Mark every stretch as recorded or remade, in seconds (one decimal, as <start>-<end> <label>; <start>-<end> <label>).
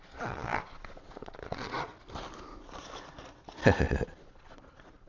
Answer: 0.0-1.9 remade; 1.9-3.9 recorded; 3.9-5.1 remade